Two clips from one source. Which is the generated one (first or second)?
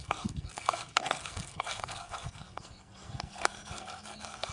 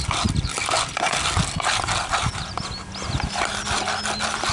first